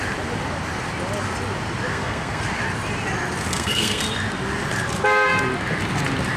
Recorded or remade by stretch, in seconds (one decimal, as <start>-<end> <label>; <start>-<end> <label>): 0.0-1.9 recorded; 1.9-2.4 remade; 2.4-3.5 recorded; 3.5-4.0 remade; 4.0-6.4 recorded